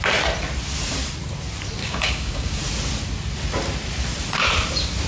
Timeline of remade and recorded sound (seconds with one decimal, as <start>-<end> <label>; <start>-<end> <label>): 0.0-1.8 recorded; 1.8-2.6 remade; 2.6-5.1 recorded